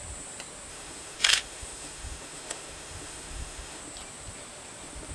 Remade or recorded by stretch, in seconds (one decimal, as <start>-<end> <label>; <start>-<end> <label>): 0.0-0.7 recorded; 0.7-3.8 remade; 3.8-5.1 recorded